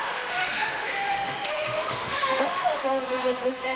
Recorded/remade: remade